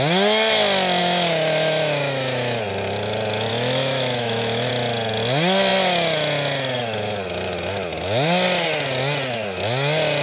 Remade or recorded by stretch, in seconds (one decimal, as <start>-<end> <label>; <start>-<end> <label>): 0.0-1.0 recorded; 1.0-2.6 remade; 2.6-3.5 recorded; 3.5-4.7 remade; 4.7-10.2 recorded